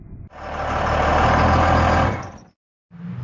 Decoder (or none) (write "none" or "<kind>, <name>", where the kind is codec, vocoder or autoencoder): none